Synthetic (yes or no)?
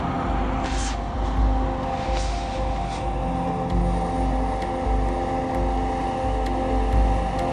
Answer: no